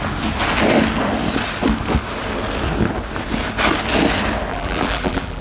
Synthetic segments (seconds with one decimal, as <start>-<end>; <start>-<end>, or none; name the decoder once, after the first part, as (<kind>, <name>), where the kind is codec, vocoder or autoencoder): 4.5-5.4 (vocoder, BigVGAN v2)